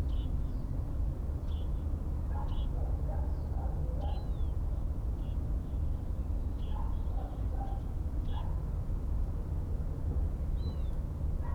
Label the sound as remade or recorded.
recorded